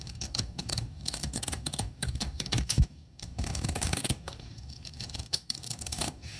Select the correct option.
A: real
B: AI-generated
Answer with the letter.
B